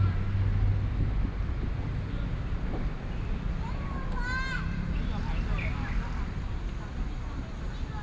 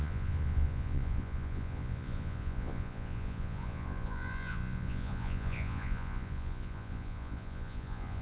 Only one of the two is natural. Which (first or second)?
first